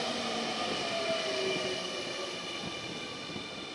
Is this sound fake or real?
real